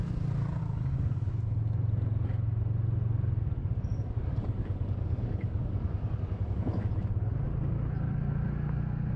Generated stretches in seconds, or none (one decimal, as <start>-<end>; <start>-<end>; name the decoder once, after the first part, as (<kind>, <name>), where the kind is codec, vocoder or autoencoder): 0.6-1.3 (codec, DAC); 3.6-6.9